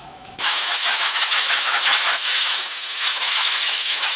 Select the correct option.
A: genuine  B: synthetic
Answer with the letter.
B